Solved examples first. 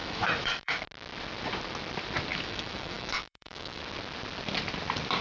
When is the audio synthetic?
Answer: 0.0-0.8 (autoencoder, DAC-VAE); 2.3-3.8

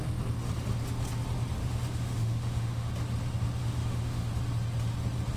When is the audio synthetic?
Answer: 1.6-2.9 (autoencoder, DAC-VAE); 3.6-4.3

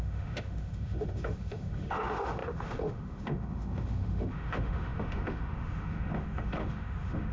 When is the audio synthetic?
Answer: 0.0-7.3 (autoencoder, DAC-VAE)

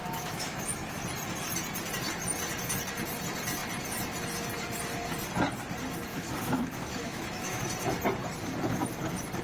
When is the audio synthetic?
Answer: 0.0-1.0 (autoencoder, DAC-VAE); 6.1-7.6

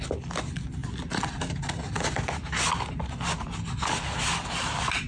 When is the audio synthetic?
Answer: none

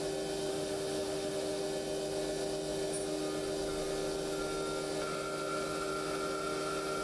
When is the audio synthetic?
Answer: 0.5-1.6 (autoencoder, DAC-VAE)